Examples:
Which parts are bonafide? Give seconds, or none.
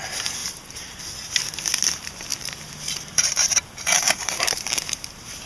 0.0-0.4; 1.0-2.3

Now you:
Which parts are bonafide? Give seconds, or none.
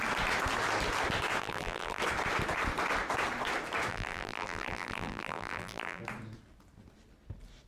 0.0-1.4; 2.0-3.9; 6.0-7.7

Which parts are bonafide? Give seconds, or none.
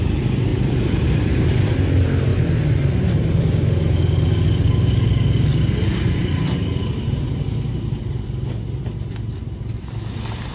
0.0-0.5; 1.5-5.5; 8.5-10.5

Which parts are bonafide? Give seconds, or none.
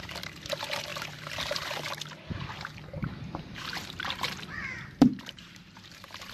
0.0-0.9; 1.8-3.0; 4.2-5.1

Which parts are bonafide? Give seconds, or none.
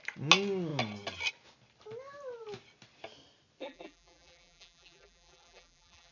0.0-3.6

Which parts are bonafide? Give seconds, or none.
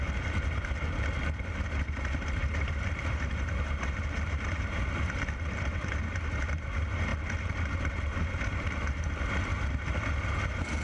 7.1-7.8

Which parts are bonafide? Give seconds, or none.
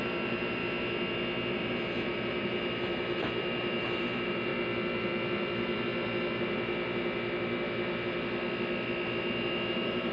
0.6-1.5; 4.5-9.7